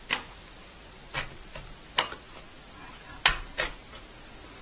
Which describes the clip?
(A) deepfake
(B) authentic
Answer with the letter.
B